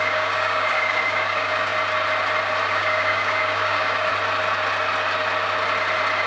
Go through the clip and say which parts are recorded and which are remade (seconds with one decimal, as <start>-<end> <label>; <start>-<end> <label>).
0.0-1.7 remade; 1.7-2.7 recorded; 2.7-4.1 remade; 4.1-6.3 recorded